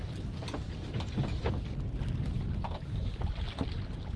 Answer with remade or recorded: recorded